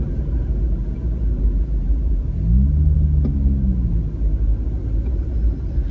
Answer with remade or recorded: recorded